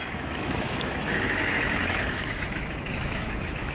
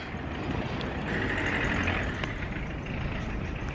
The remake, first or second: first